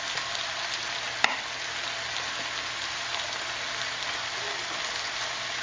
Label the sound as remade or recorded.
recorded